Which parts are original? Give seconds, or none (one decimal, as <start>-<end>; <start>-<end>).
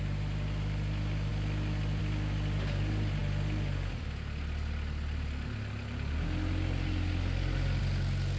0.0-8.4